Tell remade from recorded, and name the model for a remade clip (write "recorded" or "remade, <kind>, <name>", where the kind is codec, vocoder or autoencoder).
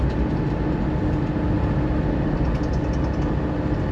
recorded